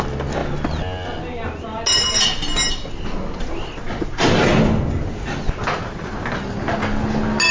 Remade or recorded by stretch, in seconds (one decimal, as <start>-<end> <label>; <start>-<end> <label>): 0.0-7.5 recorded